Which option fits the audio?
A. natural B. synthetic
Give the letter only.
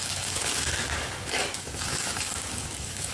B